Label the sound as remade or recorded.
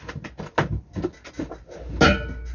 recorded